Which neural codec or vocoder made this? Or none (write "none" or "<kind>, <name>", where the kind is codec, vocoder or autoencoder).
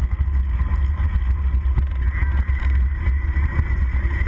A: none